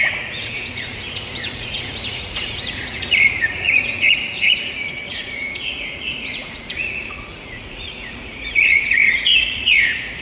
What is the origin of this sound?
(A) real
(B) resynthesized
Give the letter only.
B